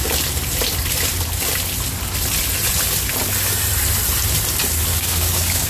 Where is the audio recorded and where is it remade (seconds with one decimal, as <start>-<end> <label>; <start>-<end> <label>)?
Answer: 0.0-4.9 recorded; 4.9-5.7 remade